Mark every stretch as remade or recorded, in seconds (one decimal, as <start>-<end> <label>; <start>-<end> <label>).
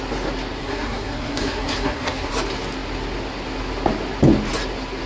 0.0-0.6 recorded; 0.6-2.3 remade; 2.3-5.1 recorded